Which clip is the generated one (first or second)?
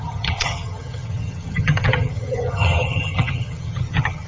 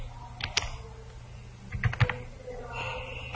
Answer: first